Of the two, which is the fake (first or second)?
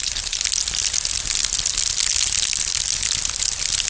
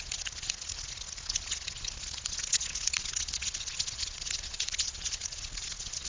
second